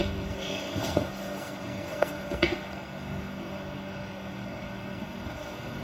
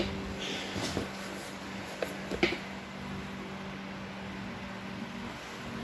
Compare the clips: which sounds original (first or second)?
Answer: second